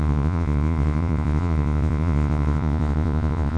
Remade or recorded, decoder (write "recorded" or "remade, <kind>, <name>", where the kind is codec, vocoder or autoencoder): remade, vocoder, Vocos